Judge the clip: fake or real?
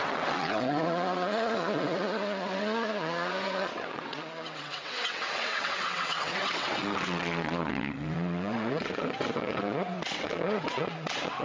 fake